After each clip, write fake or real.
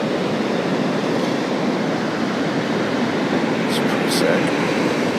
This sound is real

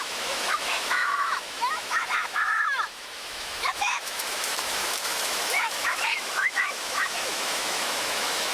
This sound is fake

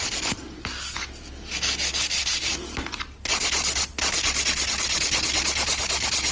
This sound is real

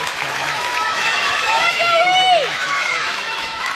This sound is fake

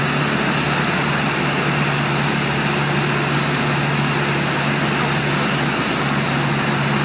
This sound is real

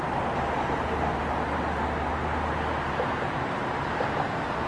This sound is real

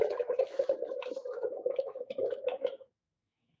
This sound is fake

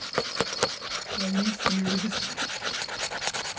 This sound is real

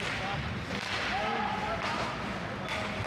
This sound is real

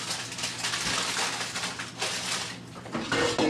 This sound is real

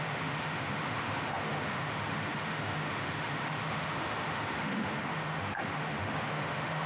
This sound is fake